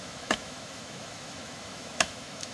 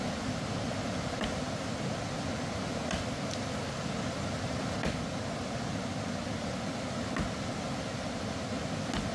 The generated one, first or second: first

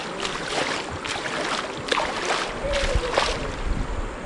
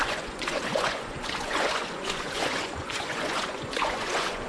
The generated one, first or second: second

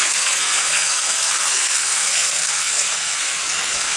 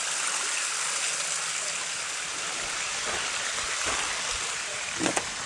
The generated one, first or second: first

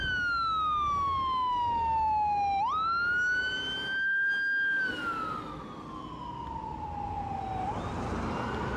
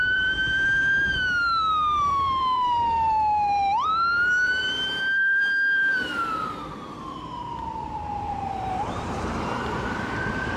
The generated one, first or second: second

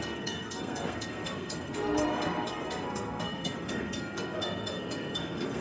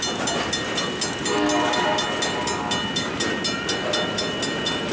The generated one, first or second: first